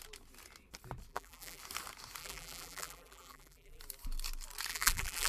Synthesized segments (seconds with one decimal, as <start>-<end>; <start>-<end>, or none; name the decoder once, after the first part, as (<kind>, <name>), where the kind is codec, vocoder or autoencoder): 1.1-1.6 (vocoder, BigVGAN v2); 2.2-3.8; 4.7-5.3